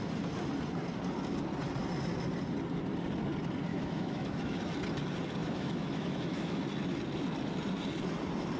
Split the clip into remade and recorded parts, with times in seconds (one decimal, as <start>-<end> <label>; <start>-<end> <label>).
0.0-3.7 recorded; 3.7-4.6 remade; 4.6-5.4 recorded; 5.4-6.6 remade; 6.6-8.6 recorded

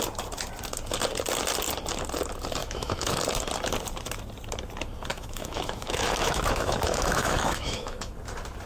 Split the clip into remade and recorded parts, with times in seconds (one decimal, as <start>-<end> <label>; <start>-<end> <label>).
0.0-2.6 recorded; 2.6-3.2 remade; 3.2-5.1 recorded; 5.1-8.1 remade; 8.1-8.7 recorded

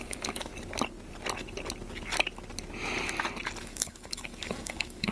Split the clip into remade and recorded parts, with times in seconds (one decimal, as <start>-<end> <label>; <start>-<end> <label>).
0.0-0.5 remade; 0.5-3.6 recorded; 3.6-5.1 remade

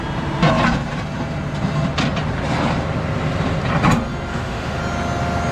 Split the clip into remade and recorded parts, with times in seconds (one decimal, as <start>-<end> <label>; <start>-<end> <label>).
0.0-4.3 recorded; 4.3-4.8 remade; 4.8-5.5 recorded